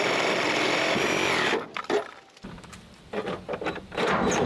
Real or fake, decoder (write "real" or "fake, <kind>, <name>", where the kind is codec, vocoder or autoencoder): real